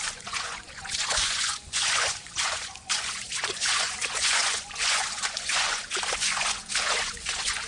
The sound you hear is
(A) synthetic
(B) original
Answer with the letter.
A